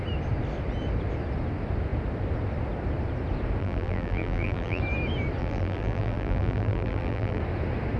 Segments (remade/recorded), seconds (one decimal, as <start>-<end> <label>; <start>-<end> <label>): 0.0-3.6 recorded; 3.6-4.8 remade; 4.8-5.4 recorded; 5.4-7.4 remade; 7.4-8.0 recorded